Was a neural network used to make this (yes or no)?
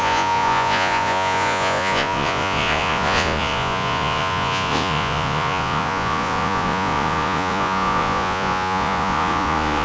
yes